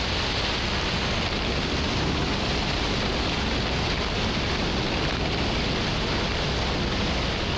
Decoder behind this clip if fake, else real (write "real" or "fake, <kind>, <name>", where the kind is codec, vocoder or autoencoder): real